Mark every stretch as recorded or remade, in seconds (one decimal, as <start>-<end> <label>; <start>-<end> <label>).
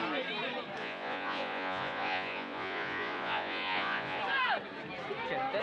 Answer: 0.0-0.8 recorded; 0.8-4.2 remade; 4.2-5.6 recorded